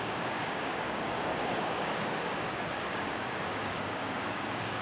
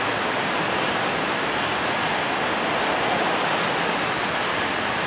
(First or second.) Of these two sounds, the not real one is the first